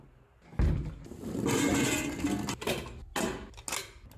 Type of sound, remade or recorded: recorded